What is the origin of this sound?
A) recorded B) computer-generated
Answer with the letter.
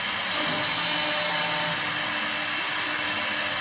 A